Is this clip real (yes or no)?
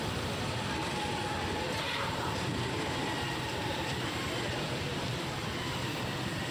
yes